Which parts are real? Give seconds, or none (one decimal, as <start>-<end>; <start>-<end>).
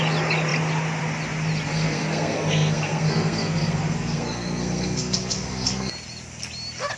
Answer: 0.0-1.7; 5.9-7.0